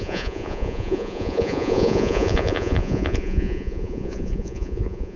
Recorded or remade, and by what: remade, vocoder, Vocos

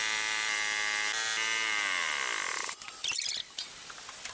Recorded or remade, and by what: recorded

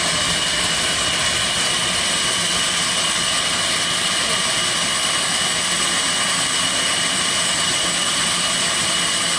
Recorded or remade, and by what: recorded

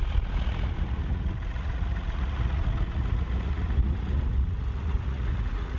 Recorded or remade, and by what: remade, vocoder, Vocos